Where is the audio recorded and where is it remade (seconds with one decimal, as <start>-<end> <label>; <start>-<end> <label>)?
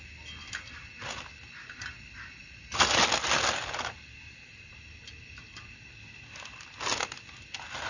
0.0-7.9 recorded